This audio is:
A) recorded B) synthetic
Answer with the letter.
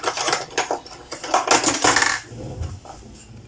A